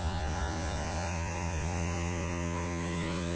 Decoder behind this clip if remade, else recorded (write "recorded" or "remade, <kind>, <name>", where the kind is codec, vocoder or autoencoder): remade, vocoder, Vocos